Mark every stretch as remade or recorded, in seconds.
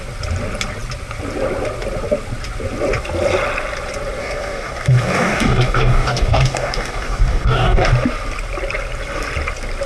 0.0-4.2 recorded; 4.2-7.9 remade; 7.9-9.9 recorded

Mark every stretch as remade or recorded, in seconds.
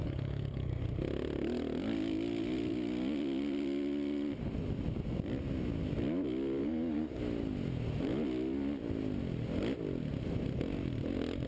0.0-0.8 remade; 0.8-6.6 recorded; 6.6-7.2 remade; 7.2-11.5 recorded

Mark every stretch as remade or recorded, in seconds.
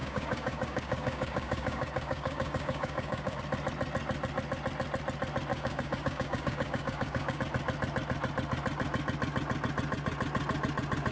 0.0-3.4 remade; 3.4-5.5 recorded; 5.5-7.4 remade; 7.4-11.1 recorded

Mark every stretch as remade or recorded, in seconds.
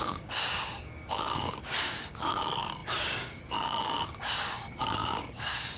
0.0-5.8 remade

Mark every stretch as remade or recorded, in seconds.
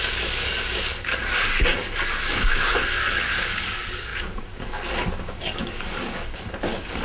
0.0-7.0 remade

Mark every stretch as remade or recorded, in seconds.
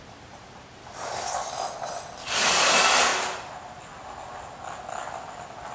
0.0-0.8 recorded; 0.8-1.5 remade; 1.5-2.2 recorded; 2.2-2.7 remade; 2.7-5.7 recorded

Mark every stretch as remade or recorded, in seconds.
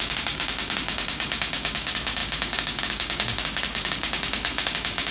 0.0-5.1 remade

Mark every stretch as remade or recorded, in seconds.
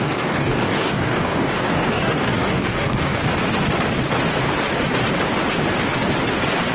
0.0-3.2 remade; 3.2-6.7 recorded